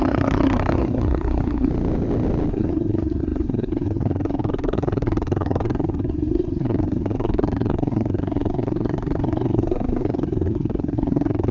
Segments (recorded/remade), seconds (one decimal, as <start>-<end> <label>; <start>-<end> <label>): 0.0-1.7 remade; 1.7-2.5 recorded; 2.5-11.5 remade